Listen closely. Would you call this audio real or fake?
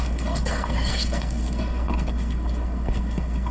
fake